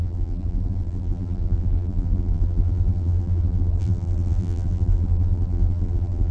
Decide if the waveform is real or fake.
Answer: fake